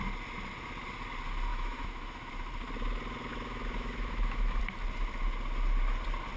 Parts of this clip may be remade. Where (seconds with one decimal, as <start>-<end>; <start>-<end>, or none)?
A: 1.5-2.3; 3.3-4.6